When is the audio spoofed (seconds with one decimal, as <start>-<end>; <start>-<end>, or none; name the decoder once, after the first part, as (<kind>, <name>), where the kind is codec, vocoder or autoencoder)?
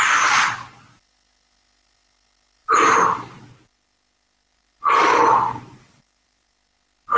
2.6-3.4 (vocoder, BigVGAN v2); 4.5-6.5